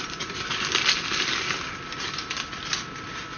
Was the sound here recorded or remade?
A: recorded